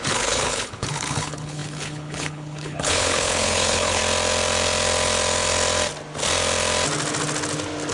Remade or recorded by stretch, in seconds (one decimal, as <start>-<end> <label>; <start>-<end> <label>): 0.0-4.0 remade; 4.0-7.9 recorded